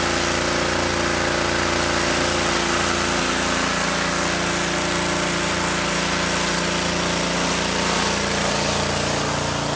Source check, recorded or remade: recorded